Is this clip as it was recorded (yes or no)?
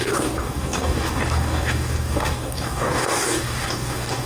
no